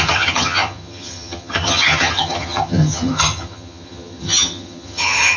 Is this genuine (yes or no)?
no